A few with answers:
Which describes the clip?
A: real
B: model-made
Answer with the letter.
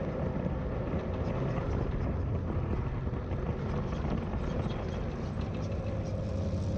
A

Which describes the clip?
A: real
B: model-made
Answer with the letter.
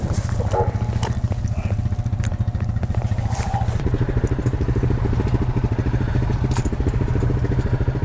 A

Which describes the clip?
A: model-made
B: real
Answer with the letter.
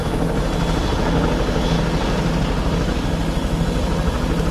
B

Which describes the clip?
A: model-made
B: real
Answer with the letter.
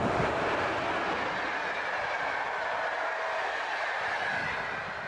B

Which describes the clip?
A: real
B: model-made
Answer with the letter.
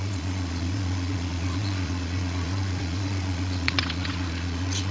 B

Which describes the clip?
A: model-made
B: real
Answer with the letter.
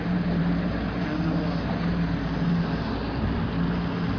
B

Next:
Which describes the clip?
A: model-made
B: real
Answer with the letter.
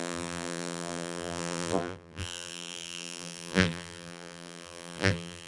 A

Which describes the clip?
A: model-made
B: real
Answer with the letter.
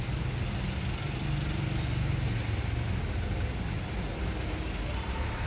B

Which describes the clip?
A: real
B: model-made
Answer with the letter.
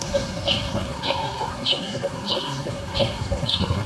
B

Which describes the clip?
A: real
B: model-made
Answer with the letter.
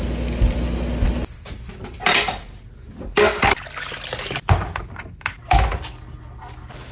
A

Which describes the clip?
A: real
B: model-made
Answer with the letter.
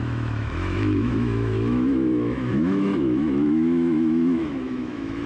B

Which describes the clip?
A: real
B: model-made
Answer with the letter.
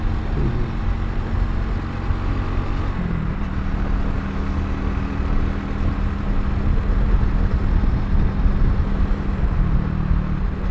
A